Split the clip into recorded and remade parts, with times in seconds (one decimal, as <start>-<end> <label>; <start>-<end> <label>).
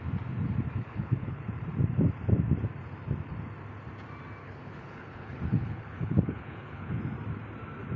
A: 0.0-0.8 recorded; 0.8-1.4 remade; 1.4-4.4 recorded; 4.4-7.0 remade; 7.0-8.0 recorded